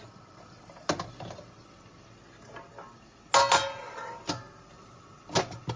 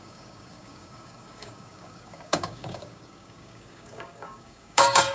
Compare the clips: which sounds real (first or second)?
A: first